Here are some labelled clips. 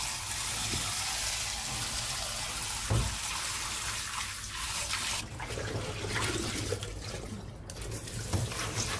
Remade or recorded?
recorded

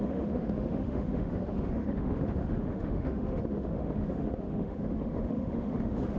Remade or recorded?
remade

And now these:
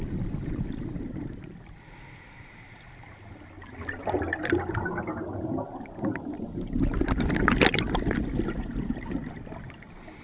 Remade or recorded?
recorded